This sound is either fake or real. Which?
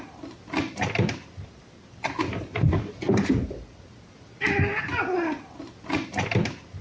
real